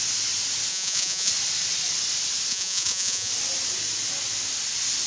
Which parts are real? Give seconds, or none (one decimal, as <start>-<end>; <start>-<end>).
0.0-0.7; 1.3-2.5; 3.3-5.1

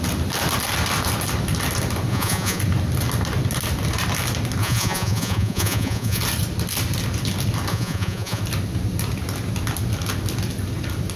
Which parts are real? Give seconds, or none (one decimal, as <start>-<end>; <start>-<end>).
0.0-2.1; 2.6-4.6; 6.2-7.7; 8.4-11.2

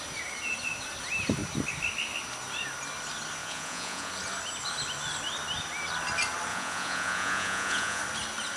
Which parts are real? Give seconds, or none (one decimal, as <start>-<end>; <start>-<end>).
0.0-3.4; 4.1-6.5; 8.0-8.6

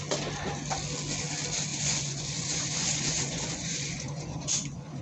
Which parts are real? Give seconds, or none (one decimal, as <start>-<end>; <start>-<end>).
0.0-1.7

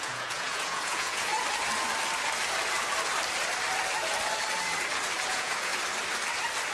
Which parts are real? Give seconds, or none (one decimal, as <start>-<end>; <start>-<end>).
1.3-5.3; 5.7-6.7